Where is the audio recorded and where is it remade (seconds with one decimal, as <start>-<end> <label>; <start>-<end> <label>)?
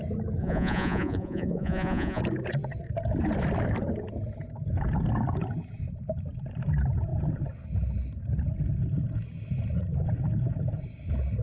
0.0-0.4 recorded; 0.4-2.2 remade; 2.2-11.4 recorded